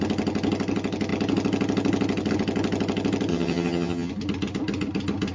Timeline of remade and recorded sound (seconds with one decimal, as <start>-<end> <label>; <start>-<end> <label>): 0.0-3.3 recorded; 3.3-4.1 remade; 4.1-5.3 recorded